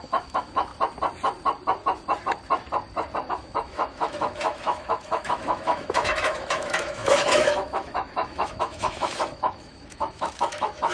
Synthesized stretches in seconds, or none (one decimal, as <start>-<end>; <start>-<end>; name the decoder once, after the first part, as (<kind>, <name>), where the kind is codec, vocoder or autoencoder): 0.0-0.7 (autoencoder, DAC-VAE); 3.3-10.9